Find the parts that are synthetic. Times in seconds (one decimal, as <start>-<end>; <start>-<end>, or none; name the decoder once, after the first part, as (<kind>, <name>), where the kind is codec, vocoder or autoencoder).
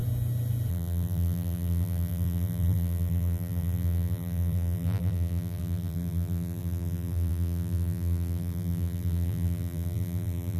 0.7-10.6 (vocoder, BigVGAN v2)